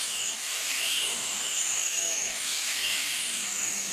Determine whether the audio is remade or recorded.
remade